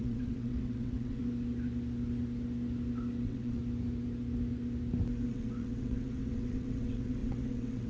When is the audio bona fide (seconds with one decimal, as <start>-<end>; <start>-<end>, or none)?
1.2-3.2; 3.6-5.3